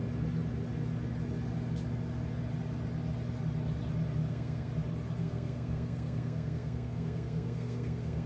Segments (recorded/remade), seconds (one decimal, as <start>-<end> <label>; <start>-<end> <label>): 0.0-4.3 recorded; 4.3-4.7 remade; 4.7-5.2 recorded; 5.2-8.3 remade